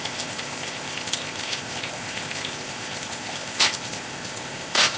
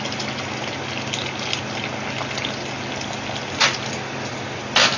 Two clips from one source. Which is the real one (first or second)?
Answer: second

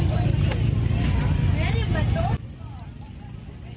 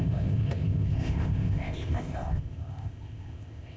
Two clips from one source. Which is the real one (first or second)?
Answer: first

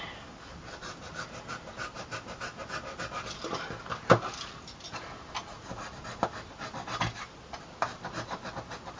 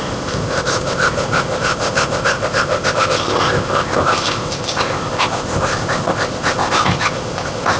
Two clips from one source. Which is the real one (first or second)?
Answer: first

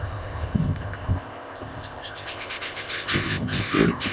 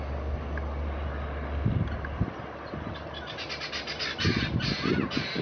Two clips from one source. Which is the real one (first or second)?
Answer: second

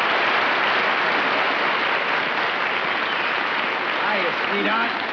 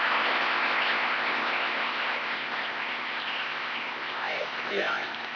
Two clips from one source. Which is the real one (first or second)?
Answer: first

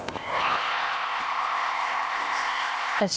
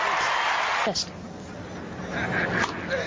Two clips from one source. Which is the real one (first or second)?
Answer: second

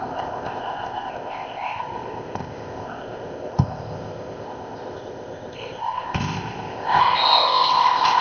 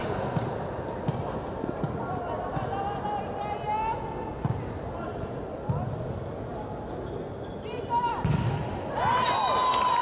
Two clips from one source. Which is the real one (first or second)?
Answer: second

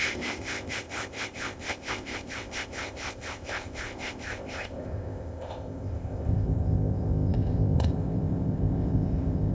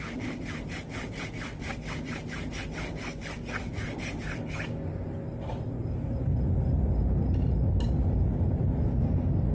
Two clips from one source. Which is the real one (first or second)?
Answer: second